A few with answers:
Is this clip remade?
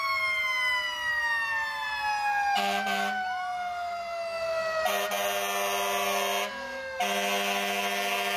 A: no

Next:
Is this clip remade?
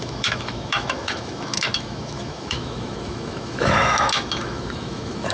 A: yes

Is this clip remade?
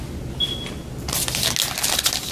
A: no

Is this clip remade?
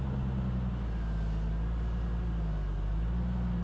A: no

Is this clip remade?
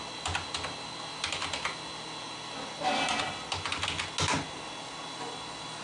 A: no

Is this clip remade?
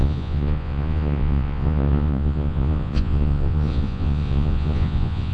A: yes